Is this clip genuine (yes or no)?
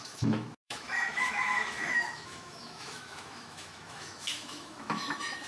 no